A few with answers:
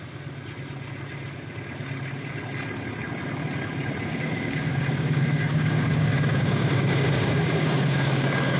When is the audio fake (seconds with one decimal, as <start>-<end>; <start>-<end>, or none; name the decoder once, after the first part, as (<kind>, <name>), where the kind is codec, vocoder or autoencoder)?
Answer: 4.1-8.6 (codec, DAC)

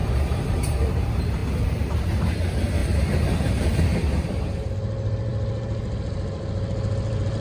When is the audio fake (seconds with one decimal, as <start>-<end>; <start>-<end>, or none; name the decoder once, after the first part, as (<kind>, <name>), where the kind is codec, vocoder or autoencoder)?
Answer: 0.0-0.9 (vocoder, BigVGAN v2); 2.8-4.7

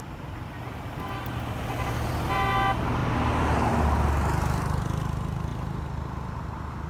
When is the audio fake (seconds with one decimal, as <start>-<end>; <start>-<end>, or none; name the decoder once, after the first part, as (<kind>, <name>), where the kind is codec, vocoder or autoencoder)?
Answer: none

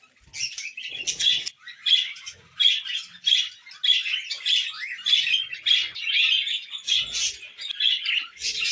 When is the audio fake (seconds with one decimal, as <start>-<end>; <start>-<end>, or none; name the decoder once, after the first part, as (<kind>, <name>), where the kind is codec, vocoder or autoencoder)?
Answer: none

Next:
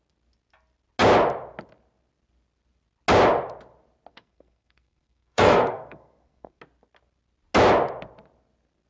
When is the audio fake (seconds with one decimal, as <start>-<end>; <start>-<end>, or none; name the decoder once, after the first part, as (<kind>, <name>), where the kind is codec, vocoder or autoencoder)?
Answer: 4.1-6.6 (codec, SNAC)